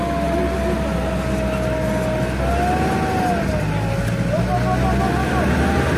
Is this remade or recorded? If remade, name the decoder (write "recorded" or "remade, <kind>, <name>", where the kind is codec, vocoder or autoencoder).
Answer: recorded